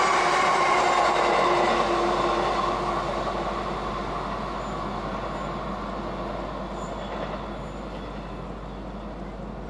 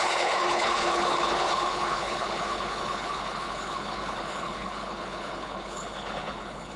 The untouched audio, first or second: first